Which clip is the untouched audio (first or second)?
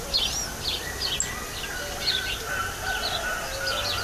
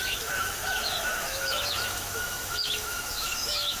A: first